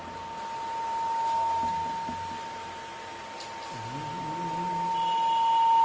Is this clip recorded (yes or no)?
yes